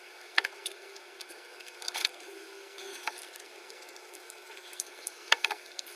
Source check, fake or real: fake